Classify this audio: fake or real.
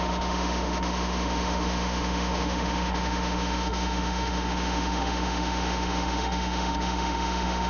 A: fake